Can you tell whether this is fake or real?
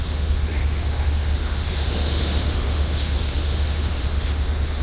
fake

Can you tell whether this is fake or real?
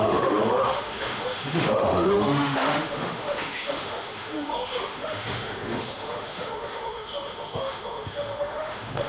fake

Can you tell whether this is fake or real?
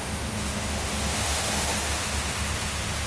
fake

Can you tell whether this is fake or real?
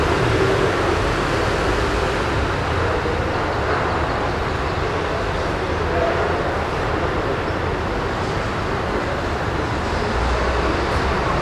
real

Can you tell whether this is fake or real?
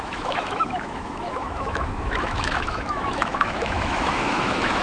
fake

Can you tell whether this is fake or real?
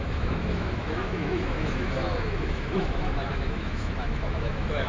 fake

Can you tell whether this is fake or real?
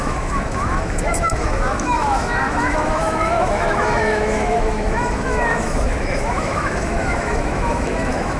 fake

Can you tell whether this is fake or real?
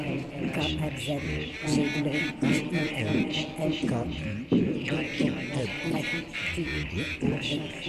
real